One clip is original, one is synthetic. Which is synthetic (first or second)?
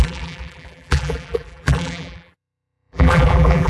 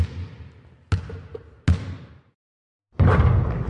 first